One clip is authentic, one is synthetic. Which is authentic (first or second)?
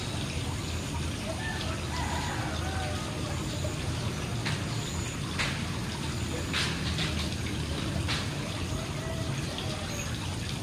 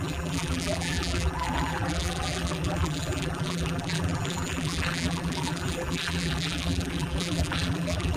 first